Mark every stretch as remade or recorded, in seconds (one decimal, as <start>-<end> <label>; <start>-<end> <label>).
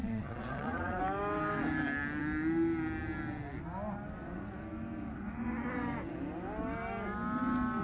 0.0-1.0 remade; 1.0-7.8 recorded